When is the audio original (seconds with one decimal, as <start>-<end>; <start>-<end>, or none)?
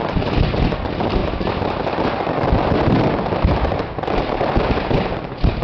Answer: 0.0-5.6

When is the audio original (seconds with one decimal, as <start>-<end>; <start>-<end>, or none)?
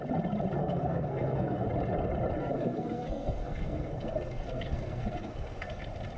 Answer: 0.0-0.6; 1.7-2.4; 5.8-6.2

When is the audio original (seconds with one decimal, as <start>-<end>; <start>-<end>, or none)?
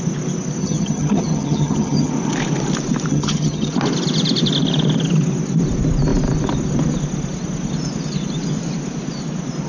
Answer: 0.0-0.6; 2.1-3.1; 3.7-9.7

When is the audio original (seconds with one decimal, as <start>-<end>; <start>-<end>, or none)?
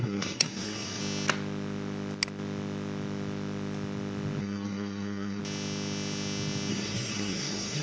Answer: 1.0-4.4; 5.4-6.7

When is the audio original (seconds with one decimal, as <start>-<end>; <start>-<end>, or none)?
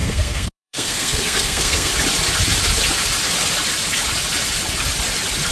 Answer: 1.9-5.5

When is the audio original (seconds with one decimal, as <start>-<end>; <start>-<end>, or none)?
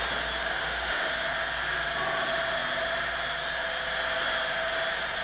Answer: 0.0-0.5; 1.1-5.2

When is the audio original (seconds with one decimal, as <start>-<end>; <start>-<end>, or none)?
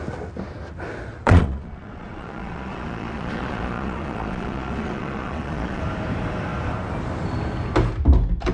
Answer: 0.0-1.1; 5.8-8.5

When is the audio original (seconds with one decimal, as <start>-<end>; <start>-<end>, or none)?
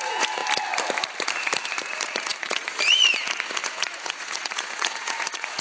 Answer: 0.4-1.8